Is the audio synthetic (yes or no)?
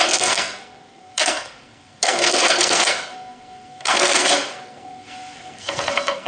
yes